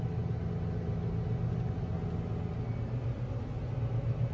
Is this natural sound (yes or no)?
yes